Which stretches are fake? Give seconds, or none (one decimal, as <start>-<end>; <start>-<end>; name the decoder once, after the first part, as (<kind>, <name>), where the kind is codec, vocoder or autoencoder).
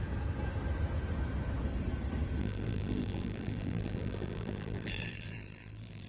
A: 2.4-6.1 (vocoder, BigVGAN v2)